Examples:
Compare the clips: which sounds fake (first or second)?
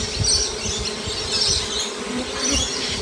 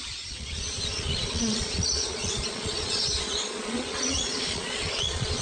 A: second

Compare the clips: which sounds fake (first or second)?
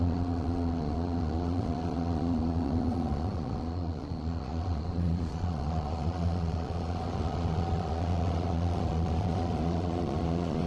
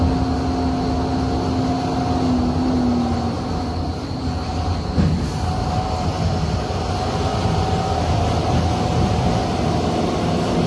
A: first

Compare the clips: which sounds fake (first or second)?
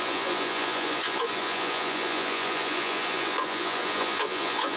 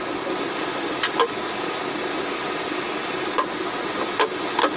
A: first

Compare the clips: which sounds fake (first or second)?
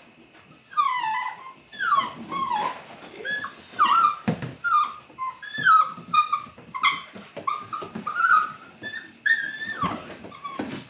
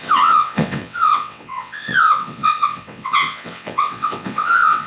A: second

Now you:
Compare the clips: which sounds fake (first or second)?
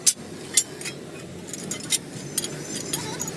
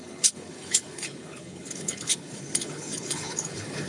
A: second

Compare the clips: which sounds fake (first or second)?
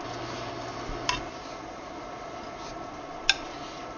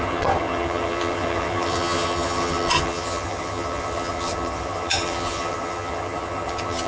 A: second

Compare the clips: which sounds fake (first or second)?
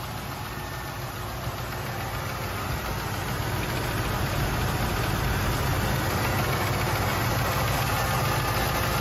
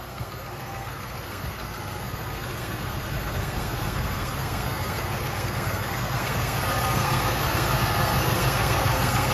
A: second